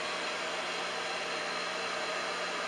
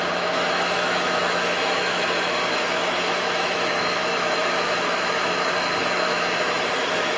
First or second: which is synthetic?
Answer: second